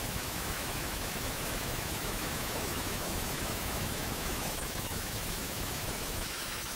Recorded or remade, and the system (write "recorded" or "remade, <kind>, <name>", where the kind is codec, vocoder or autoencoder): remade, autoencoder, DAC-VAE